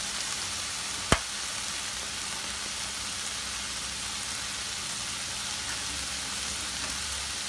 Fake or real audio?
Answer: real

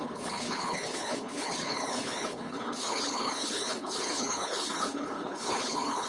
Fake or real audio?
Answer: fake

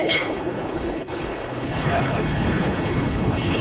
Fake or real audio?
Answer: fake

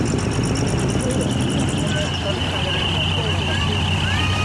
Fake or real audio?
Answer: real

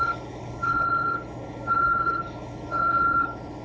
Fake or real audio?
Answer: fake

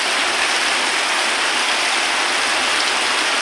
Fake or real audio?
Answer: real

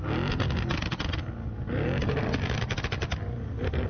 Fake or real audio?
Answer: real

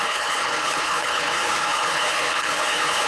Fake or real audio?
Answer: fake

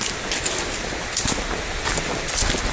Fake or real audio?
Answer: real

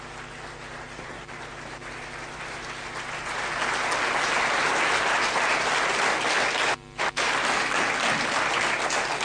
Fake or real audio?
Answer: real